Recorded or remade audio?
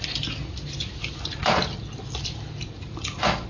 recorded